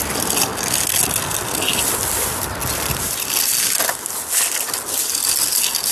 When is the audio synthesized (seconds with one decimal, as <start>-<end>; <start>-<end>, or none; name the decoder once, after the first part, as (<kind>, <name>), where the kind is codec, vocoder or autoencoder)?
none